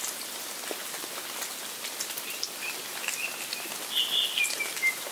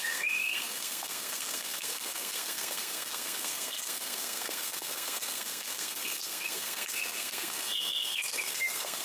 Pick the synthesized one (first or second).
second